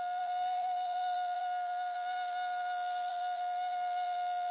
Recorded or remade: remade